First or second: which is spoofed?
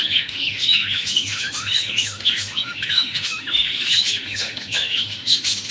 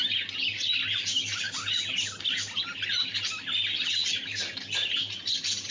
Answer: first